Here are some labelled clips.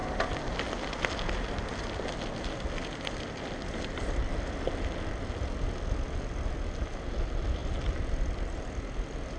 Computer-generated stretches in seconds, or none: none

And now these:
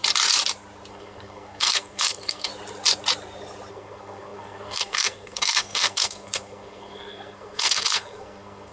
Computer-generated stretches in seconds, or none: 0.9-2.5 (codec, SNAC); 3.7-8.7

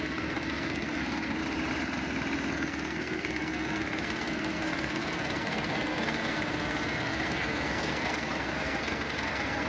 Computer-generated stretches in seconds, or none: 0.0-1.4 (codec, SNAC); 2.5-9.7